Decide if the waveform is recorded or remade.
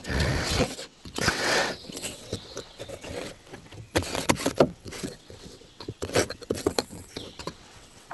remade